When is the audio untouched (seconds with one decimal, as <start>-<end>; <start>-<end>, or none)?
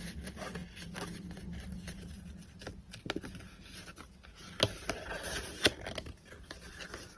0.0-7.2